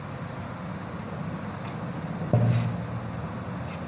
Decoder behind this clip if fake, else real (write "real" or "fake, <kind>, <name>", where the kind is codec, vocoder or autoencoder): real